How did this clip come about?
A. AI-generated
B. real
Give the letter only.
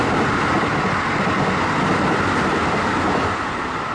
B